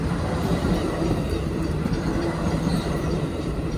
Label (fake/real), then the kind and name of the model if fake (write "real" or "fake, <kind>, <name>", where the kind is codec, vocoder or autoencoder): fake, vocoder, BigVGAN v2